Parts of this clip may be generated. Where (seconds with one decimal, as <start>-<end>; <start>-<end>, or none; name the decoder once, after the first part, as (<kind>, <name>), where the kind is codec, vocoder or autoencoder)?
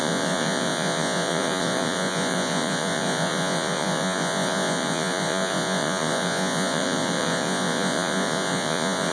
0.0-9.1 (vocoder, Vocos)